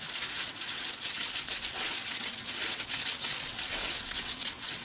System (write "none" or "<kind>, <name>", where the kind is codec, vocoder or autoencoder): vocoder, WaveNeXt